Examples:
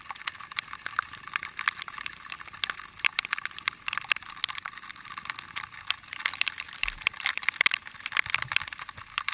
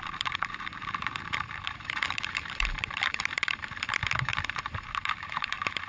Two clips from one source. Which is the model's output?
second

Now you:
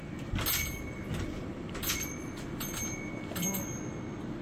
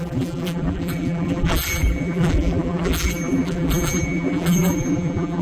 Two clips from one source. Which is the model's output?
second